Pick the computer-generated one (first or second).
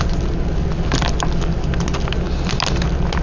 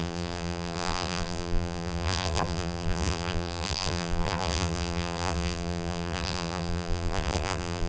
second